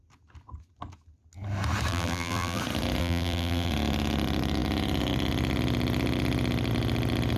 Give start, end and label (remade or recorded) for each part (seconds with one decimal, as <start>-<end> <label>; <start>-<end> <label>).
0.0-1.9 recorded; 1.9-2.6 remade; 2.6-3.0 recorded; 3.0-3.7 remade; 3.7-7.4 recorded